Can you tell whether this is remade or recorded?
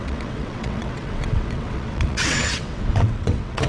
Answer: remade